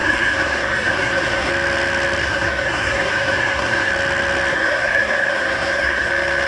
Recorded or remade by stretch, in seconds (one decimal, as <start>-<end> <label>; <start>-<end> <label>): 0.0-1.5 remade; 1.5-2.2 recorded; 2.2-3.9 remade; 3.9-4.5 recorded; 4.5-6.1 remade; 6.1-6.5 recorded